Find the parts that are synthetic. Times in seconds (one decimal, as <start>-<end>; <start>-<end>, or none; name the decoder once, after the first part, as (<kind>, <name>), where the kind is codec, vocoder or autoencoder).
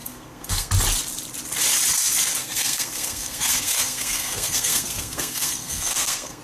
0.0-0.7 (codec, SNAC); 2.4-6.4